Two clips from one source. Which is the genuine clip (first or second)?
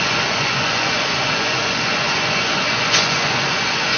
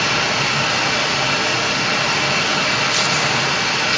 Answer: second